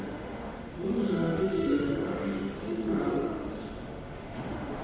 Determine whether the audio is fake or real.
fake